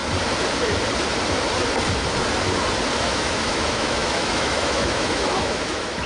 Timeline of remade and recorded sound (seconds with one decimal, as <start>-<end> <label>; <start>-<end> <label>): 0.0-3.0 recorded; 3.0-6.1 remade